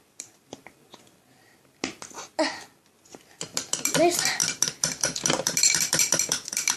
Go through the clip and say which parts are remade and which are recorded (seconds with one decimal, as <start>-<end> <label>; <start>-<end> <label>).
0.0-6.8 recorded